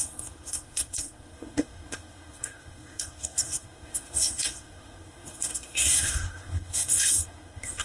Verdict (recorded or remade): remade